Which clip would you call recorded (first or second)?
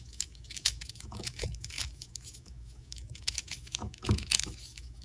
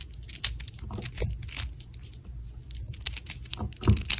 second